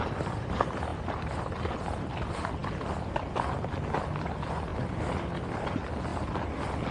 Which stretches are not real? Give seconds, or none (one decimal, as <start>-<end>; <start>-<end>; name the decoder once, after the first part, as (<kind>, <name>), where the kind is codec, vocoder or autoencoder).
none